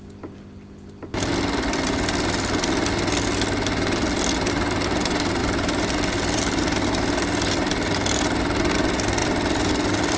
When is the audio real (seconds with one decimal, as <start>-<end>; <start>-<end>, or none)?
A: 0.0-5.4; 6.9-9.2